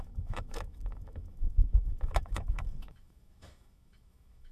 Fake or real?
fake